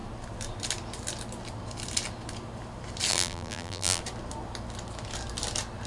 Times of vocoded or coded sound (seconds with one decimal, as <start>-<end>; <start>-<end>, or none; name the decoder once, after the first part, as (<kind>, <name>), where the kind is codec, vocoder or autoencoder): 3.1-4.0 (vocoder, BigVGAN v2)